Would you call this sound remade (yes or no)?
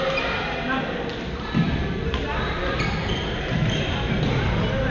no